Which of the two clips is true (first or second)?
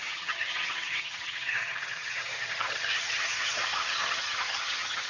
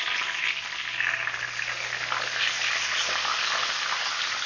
second